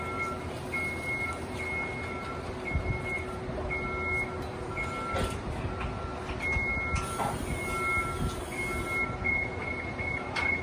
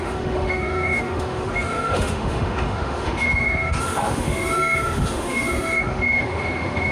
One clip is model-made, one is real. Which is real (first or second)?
first